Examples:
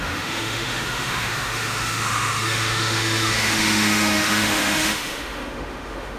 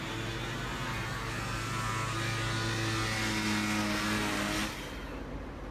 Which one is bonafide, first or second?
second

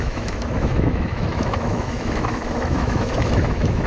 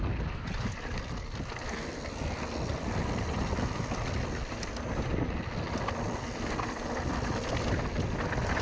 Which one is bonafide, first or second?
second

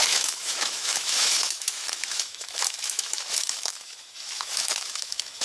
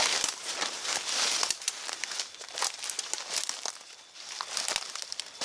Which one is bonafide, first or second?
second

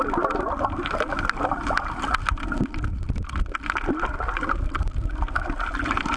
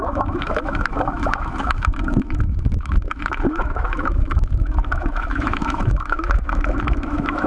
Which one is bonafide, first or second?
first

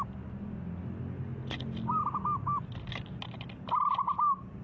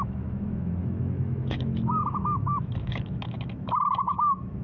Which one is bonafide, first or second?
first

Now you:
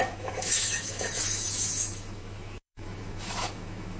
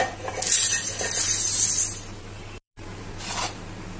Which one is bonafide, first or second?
second